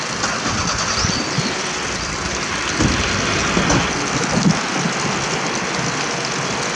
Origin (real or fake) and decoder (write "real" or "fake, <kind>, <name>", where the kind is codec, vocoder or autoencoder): real